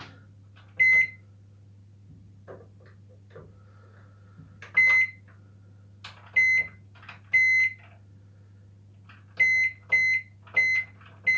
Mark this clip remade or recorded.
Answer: recorded